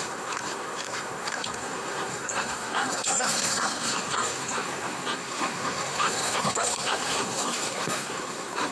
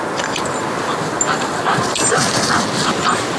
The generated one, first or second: first